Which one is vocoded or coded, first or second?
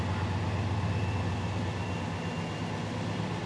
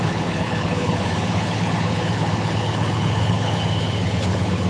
second